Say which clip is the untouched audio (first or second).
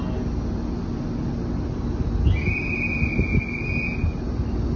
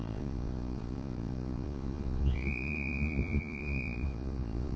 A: first